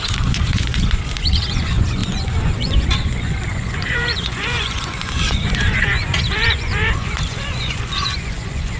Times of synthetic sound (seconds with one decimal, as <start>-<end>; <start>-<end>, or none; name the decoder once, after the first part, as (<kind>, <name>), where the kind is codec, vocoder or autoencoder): 0.0-8.8 (vocoder, Vocos)